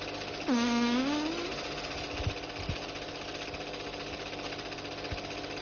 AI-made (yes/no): no